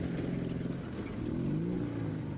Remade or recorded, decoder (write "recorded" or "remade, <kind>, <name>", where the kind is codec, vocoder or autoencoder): recorded